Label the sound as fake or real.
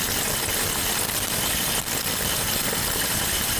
real